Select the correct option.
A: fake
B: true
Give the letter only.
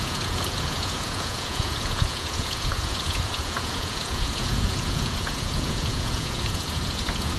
A